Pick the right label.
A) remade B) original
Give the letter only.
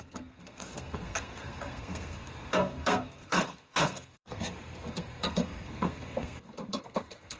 A